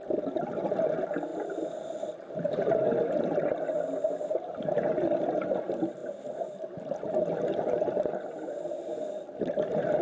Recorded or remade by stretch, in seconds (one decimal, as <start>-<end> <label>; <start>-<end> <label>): 0.0-10.0 recorded